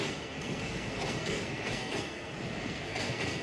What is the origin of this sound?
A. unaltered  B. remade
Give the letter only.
B